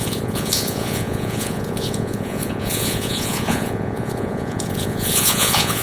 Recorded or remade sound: remade